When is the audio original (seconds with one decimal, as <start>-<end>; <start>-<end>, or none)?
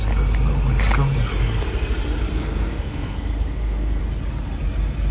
0.0-2.3; 4.0-5.1